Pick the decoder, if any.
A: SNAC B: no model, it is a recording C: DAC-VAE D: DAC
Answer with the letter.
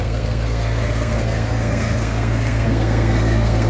A